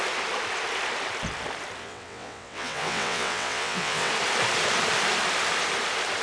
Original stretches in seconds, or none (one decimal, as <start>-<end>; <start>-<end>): 0.0-1.8; 4.1-6.2